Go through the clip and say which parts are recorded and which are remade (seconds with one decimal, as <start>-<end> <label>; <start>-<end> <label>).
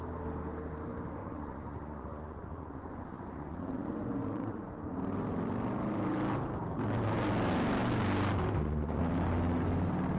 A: 0.0-1.2 recorded; 1.2-4.7 remade; 4.7-8.5 recorded; 8.5-9.1 remade; 9.1-10.2 recorded